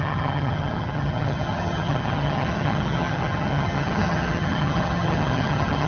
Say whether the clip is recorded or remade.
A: remade